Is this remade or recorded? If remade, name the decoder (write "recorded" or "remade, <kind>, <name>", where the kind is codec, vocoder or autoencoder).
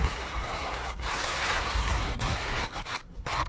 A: remade, codec, SNAC